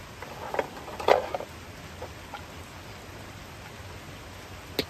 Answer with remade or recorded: recorded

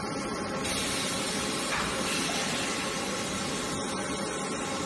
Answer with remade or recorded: recorded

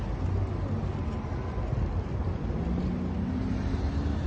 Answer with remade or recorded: recorded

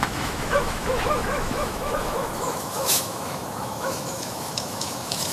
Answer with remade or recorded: remade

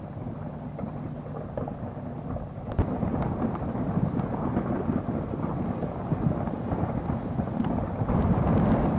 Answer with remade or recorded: recorded